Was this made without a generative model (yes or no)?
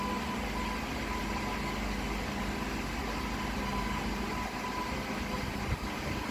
yes